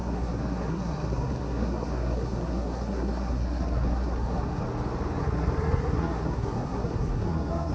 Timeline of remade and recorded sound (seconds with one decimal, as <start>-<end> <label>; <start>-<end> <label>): 0.0-4.6 remade; 4.6-5.2 recorded; 5.2-7.7 remade